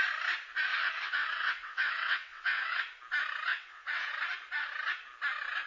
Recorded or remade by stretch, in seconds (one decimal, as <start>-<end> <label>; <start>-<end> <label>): 0.0-0.7 recorded; 0.7-2.8 remade; 2.8-3.5 recorded; 3.5-4.1 remade; 4.1-5.7 recorded

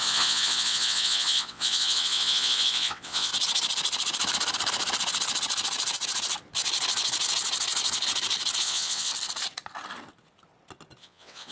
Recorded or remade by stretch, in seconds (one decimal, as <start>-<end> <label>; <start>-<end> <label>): 0.0-3.3 remade; 3.3-8.6 recorded; 8.6-9.1 remade; 9.1-11.0 recorded; 11.0-11.5 remade

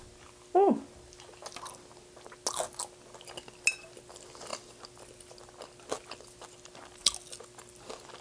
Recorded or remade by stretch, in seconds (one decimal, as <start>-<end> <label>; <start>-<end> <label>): 0.0-8.2 recorded

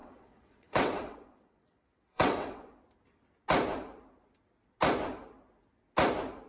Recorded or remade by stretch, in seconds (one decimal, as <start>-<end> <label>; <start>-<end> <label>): 0.0-2.8 remade; 2.8-6.5 recorded

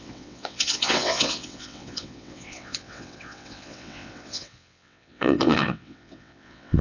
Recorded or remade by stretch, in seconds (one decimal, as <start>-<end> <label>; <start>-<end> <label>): 0.0-6.8 remade

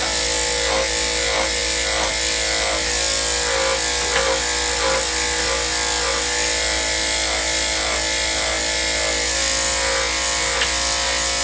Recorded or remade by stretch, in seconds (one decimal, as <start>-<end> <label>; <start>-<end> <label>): 0.0-11.4 recorded